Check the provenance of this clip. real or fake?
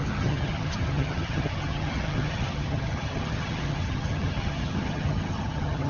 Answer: fake